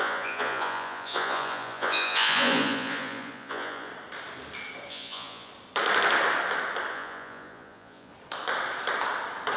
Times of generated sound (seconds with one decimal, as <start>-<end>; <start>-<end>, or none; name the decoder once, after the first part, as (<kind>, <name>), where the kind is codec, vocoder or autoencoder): 0.0-3.9 (vocoder, Vocos); 4.9-5.5; 6.9-8.1

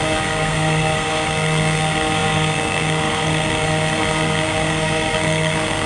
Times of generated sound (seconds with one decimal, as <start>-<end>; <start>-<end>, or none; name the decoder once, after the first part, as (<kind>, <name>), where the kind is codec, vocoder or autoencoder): 0.0-5.9 (codec, SNAC)

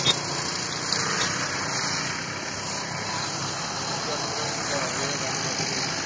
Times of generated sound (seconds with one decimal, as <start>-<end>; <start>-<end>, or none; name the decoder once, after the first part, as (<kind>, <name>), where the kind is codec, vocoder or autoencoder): none

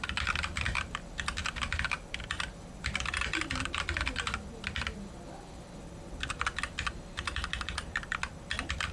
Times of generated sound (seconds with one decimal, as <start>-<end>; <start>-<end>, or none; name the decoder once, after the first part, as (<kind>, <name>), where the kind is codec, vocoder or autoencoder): none

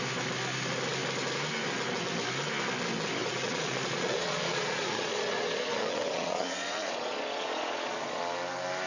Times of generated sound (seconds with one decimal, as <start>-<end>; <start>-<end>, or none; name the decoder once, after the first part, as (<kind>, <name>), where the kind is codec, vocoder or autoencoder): 3.2-8.2 (vocoder, Vocos)

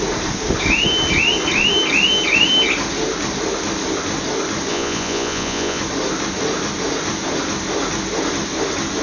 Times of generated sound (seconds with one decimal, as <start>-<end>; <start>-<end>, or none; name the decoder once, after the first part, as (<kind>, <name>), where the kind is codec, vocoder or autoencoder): 4.7-5.8 (vocoder, Vocos)

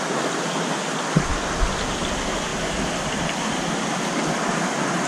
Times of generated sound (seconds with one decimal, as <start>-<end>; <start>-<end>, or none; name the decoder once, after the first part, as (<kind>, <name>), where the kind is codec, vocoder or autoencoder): none